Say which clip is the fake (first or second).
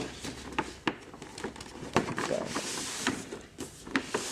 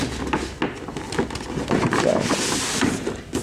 first